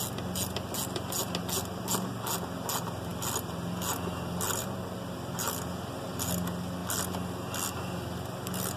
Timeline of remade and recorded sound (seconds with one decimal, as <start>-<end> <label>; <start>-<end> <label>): 0.0-8.8 recorded